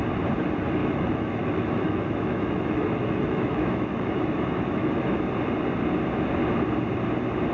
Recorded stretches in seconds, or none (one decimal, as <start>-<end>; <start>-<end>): 0.0-0.8; 5.3-7.5